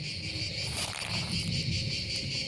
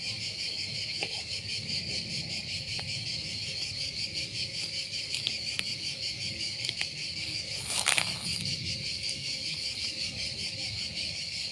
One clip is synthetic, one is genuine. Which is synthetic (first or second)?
second